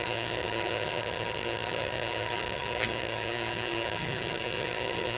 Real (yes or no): no